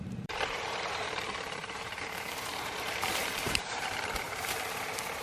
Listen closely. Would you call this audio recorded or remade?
remade